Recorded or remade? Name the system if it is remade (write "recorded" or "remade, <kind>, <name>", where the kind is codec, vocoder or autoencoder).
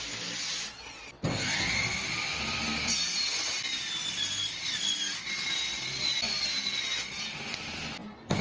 recorded